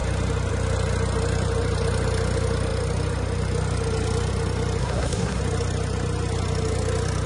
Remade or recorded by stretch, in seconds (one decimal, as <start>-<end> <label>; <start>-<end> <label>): 0.0-4.8 recorded; 4.8-5.4 remade; 5.4-7.3 recorded